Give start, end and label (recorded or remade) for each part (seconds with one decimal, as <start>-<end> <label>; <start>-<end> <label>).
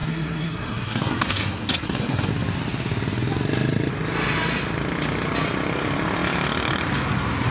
0.0-2.3 remade; 2.3-7.5 recorded